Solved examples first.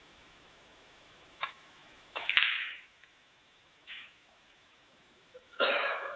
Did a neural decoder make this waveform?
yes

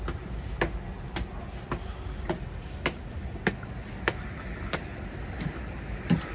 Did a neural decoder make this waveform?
no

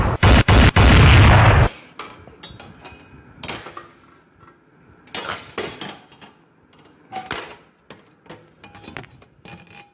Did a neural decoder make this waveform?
no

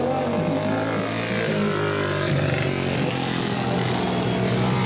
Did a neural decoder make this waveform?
no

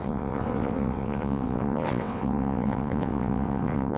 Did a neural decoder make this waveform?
yes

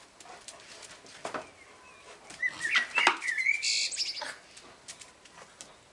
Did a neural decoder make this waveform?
no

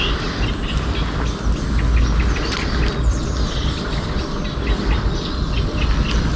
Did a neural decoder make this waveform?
no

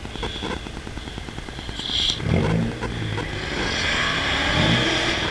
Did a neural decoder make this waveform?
no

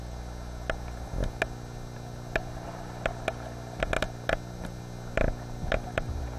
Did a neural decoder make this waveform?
no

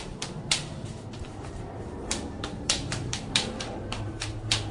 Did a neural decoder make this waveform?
yes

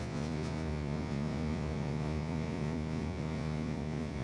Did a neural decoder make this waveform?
yes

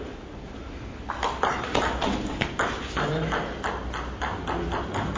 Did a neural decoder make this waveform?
no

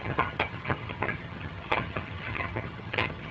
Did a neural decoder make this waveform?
yes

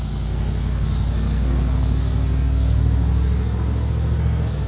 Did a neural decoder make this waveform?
yes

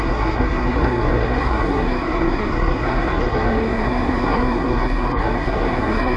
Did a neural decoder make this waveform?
yes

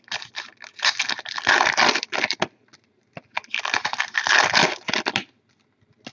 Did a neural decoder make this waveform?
no